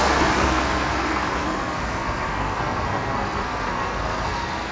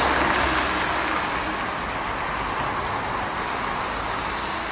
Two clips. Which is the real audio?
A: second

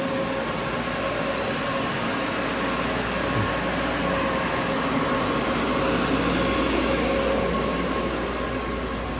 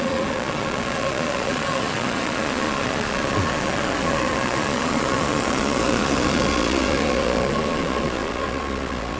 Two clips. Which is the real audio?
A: first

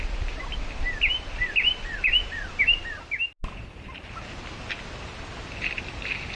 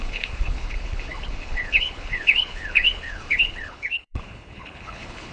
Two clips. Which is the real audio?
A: first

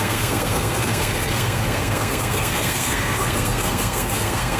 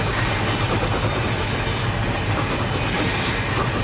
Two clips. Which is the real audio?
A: second